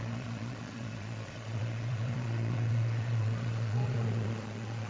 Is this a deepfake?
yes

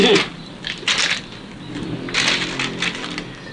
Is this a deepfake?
no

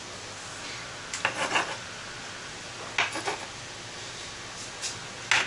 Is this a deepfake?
no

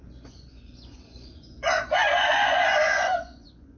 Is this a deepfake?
yes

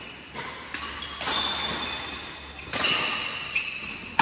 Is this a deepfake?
no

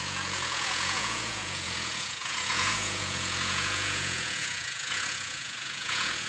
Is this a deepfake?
yes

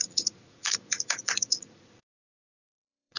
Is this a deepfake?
yes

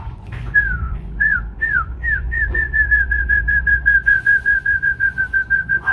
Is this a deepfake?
yes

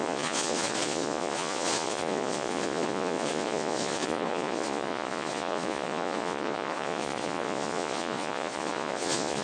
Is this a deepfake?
yes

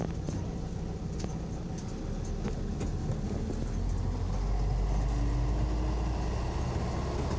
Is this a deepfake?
no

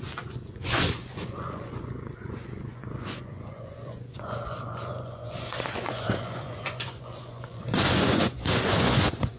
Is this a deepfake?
yes